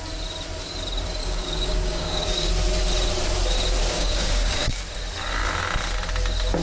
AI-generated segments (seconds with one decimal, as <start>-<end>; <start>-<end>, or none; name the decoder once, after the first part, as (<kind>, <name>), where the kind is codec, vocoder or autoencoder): 1.2-2.5 (codec, DAC); 3.8-4.8